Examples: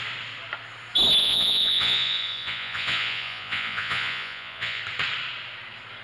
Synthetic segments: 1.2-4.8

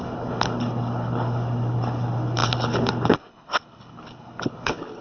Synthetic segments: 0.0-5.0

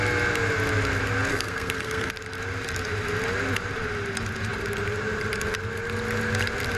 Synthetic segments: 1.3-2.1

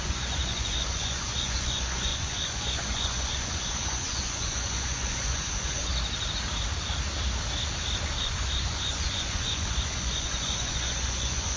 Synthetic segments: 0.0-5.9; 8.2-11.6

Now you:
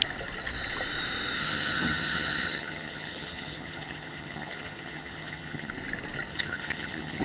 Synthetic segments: 1.4-5.7; 6.3-7.2